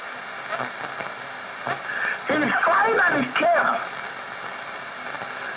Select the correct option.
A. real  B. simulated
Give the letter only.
A